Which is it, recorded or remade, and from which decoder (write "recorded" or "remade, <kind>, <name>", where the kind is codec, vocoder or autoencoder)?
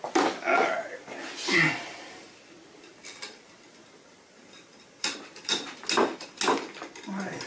recorded